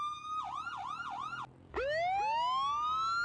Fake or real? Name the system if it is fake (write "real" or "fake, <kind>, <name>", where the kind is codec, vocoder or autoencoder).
real